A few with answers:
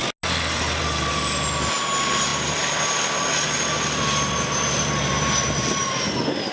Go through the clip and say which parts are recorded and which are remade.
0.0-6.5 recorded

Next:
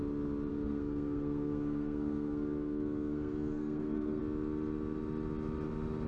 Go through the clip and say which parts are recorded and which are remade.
0.0-0.5 recorded; 0.5-4.2 remade; 4.2-6.1 recorded

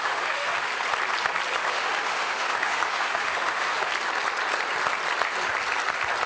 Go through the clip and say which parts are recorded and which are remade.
0.0-0.7 remade; 0.7-1.7 recorded; 1.7-3.9 remade; 3.9-6.3 recorded

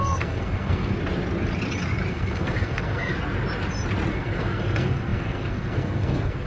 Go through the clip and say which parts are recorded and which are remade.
0.0-1.0 remade; 1.0-2.1 recorded; 2.1-3.1 remade; 3.1-4.1 recorded; 4.1-6.5 remade